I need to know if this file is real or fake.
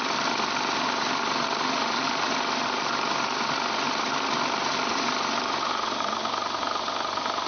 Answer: real